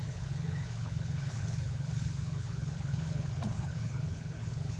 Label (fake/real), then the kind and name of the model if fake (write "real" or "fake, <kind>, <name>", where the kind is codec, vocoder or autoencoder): fake, codec, HILCodec